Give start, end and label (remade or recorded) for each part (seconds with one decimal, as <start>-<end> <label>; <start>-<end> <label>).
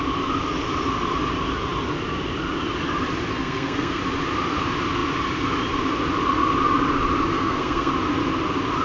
0.0-3.3 recorded; 3.3-4.0 remade; 4.0-7.3 recorded; 7.3-7.9 remade; 7.9-8.8 recorded